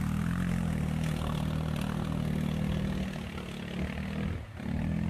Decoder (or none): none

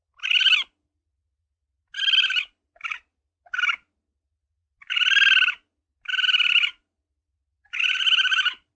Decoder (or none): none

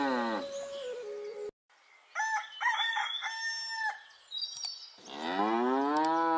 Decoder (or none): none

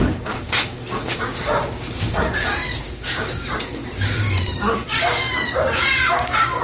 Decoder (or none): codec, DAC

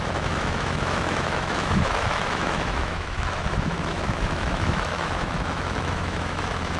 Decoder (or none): autoencoder, DAC-VAE